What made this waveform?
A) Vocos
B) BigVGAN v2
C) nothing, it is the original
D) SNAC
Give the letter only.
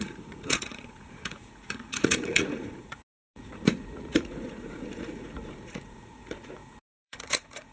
A